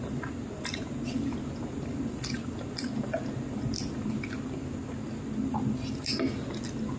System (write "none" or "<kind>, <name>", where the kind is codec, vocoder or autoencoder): none